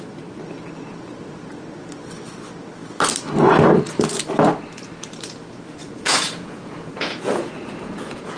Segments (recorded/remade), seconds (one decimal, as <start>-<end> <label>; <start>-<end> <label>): 0.0-5.8 recorded; 5.8-8.4 remade